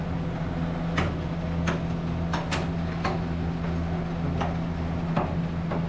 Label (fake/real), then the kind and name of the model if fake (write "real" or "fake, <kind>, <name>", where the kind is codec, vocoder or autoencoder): real